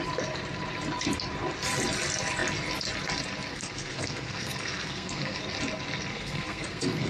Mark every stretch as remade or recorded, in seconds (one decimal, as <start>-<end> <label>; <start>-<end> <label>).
0.0-3.5 recorded; 3.5-5.4 remade; 5.4-6.1 recorded; 6.1-7.1 remade